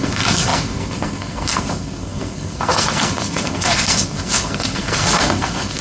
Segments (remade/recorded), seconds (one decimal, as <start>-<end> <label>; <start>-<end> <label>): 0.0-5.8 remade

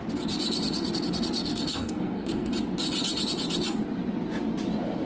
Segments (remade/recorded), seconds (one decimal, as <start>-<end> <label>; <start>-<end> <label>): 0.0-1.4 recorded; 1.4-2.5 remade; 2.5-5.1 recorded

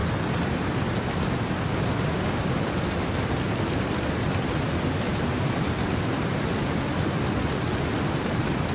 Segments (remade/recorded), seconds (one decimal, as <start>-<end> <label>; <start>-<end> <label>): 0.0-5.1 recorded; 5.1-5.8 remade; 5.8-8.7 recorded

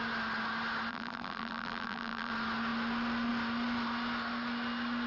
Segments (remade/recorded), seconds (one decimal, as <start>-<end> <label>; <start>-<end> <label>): 0.0-0.9 recorded; 0.9-2.3 remade; 2.3-5.1 recorded

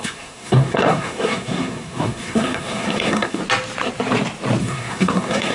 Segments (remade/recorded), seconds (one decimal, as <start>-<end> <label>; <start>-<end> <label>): 0.0-3.4 remade; 3.4-4.6 recorded; 4.6-5.5 remade